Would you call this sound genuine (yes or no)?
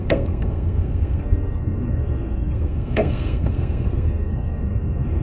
no